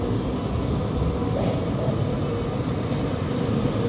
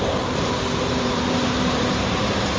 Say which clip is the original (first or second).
first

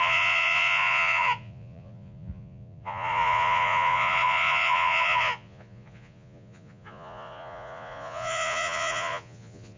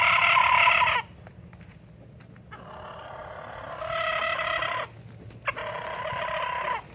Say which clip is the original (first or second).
second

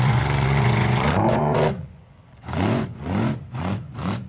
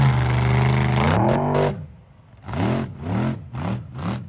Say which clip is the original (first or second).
second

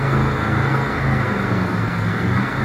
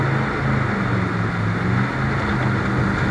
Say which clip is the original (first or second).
second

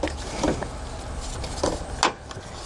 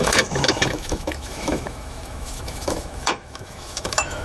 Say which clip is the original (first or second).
first